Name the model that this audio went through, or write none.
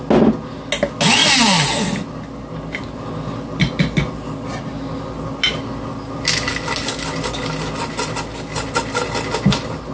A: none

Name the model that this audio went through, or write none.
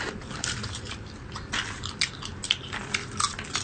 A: none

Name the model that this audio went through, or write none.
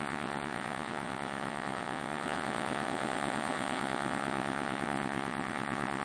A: vocoder, WaveNeXt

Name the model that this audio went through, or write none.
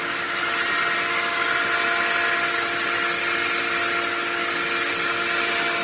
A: none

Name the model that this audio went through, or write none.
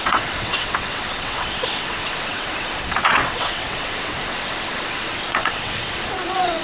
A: vocoder, WaveNeXt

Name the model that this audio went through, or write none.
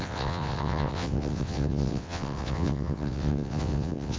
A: vocoder, WaveNeXt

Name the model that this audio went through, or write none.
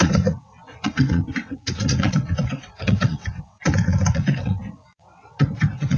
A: vocoder, WaveNeXt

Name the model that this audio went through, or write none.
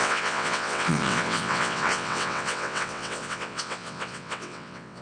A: vocoder, WaveNeXt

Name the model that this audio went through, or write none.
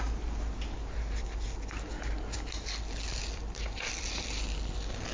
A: none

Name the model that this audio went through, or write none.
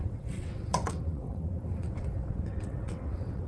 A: vocoder, WaveNeXt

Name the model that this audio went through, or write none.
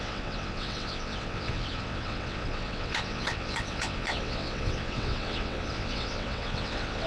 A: vocoder, WaveNeXt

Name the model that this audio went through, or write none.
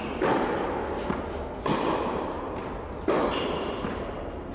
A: none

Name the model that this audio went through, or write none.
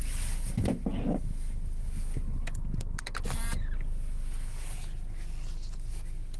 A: none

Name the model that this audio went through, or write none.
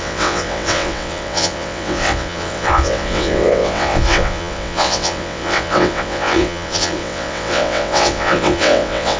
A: vocoder, WaveNeXt